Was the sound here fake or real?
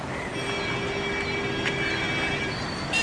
real